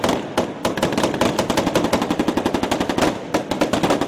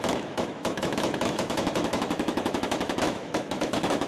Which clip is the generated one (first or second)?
second